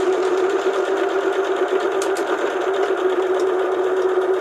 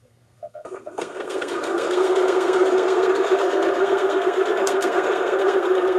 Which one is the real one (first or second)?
first